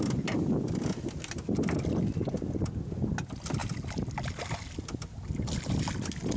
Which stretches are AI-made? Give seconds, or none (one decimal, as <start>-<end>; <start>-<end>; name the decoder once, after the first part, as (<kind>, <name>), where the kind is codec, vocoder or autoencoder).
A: none